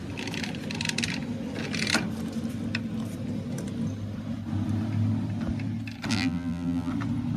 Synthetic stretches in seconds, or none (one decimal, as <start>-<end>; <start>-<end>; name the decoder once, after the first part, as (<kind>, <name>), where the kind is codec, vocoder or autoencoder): 6.1-6.9 (vocoder, BigVGAN v2)